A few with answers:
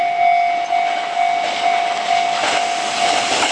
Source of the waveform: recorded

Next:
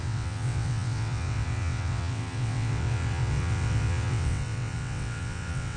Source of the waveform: remade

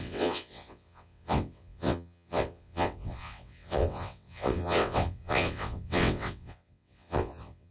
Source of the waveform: remade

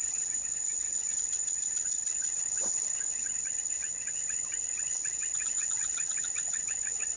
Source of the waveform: remade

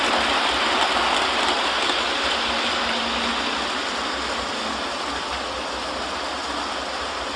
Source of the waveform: recorded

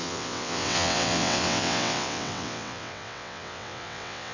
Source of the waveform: remade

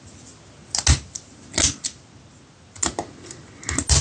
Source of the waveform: recorded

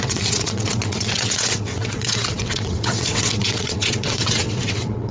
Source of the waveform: remade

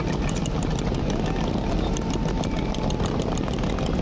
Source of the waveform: recorded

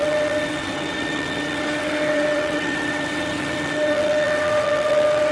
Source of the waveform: remade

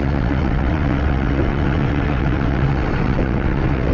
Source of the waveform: remade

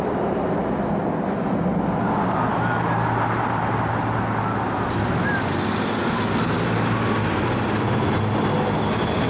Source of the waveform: recorded